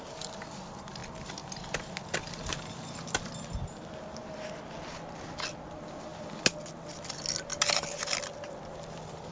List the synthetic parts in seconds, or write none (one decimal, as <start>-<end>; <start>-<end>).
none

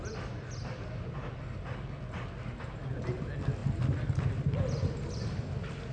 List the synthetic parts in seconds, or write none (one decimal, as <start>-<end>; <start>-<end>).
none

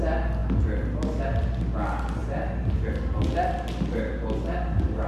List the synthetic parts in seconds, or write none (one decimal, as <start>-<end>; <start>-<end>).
none